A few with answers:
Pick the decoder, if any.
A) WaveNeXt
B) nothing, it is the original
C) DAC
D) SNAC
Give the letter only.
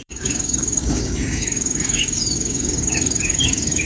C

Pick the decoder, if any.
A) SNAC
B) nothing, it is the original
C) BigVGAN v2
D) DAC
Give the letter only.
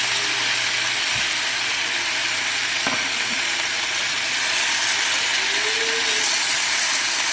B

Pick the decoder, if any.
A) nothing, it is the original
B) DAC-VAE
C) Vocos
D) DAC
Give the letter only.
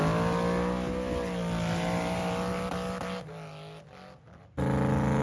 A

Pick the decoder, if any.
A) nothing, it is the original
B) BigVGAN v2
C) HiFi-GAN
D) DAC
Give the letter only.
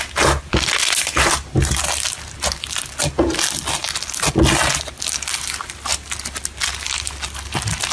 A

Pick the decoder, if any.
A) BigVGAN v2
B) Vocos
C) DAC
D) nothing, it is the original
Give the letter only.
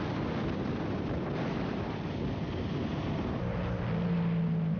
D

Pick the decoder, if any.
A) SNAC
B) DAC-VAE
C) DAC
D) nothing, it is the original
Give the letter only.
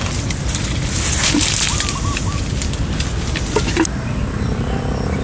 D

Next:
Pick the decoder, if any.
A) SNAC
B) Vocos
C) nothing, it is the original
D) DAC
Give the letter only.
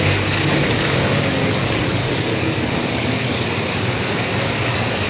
D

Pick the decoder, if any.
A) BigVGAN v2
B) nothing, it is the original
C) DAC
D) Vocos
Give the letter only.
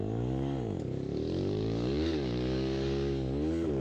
C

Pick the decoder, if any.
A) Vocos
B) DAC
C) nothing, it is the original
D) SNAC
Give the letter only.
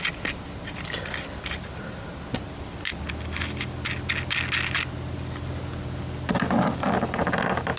C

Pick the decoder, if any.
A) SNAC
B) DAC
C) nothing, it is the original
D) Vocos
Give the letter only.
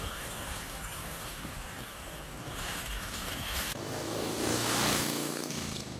B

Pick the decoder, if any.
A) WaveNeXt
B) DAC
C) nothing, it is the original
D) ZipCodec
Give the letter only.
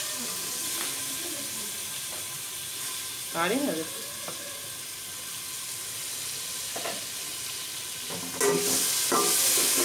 C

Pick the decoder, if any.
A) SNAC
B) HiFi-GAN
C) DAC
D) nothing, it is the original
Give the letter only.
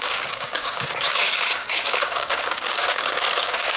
C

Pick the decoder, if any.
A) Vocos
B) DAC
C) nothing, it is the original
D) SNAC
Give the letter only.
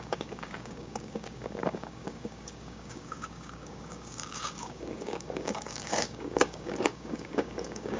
B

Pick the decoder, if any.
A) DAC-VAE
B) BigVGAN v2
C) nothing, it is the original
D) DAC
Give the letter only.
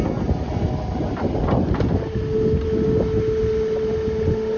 C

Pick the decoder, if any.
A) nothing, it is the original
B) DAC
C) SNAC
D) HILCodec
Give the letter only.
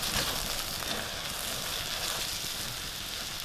A